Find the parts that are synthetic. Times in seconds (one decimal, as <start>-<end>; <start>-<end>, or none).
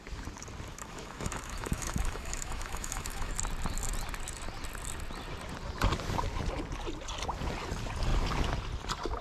0.7-3.3